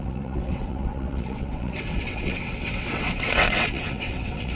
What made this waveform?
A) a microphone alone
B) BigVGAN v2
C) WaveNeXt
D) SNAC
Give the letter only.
C